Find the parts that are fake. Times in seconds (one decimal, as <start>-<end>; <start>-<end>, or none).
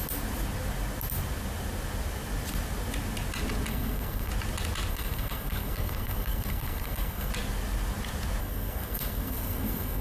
3.7-4.3; 4.9-7.3; 8.4-10.0